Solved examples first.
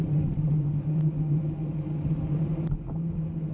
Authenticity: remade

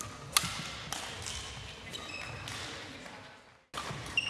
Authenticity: recorded